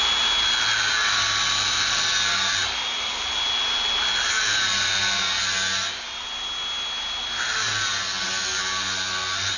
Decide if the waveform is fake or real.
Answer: real